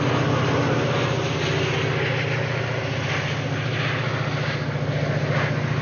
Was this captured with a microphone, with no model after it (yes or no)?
yes